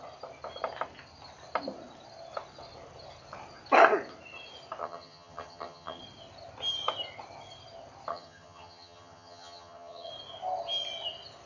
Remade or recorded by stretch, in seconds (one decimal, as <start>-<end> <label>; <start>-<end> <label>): 0.0-4.8 recorded; 4.8-6.0 remade; 6.0-8.1 recorded; 8.1-10.1 remade; 10.1-11.5 recorded